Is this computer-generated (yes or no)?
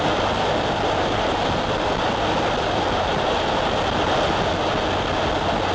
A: no